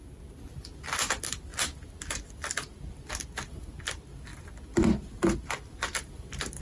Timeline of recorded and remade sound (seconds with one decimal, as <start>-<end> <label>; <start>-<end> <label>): 0.0-6.6 recorded